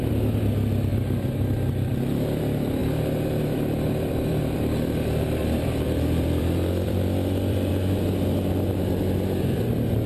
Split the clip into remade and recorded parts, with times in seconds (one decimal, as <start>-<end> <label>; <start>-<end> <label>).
0.0-0.9 recorded; 0.9-2.4 remade; 2.4-2.8 recorded; 2.8-7.7 remade; 7.7-10.1 recorded